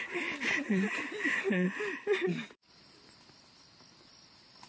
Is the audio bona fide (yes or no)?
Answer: yes